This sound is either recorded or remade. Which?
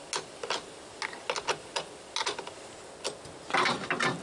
recorded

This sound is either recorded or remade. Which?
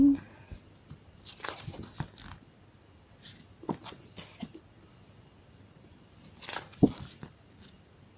recorded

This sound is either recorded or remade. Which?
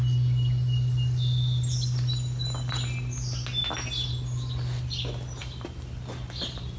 recorded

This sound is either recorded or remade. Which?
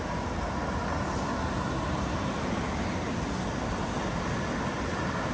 recorded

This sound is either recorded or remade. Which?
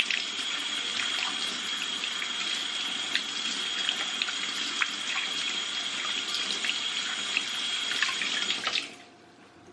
recorded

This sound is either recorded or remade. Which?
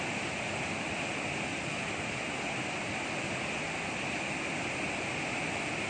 recorded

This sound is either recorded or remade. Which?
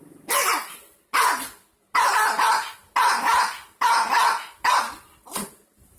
recorded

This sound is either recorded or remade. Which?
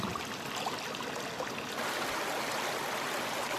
recorded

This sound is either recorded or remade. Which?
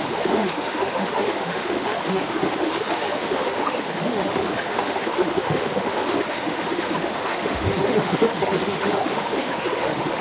remade